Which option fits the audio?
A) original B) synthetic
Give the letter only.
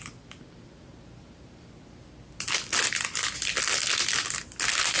A